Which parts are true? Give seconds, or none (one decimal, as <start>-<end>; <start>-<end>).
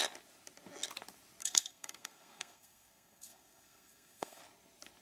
0.0-1.4; 4.4-5.0